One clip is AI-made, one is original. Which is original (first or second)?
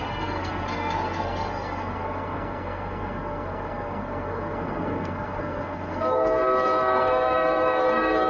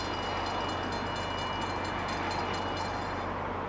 second